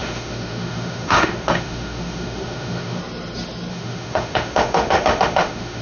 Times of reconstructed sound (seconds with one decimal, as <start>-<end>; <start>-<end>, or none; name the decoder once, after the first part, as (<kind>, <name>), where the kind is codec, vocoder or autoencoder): 0.0-3.0 (autoencoder, DAC-VAE); 3.7-5.8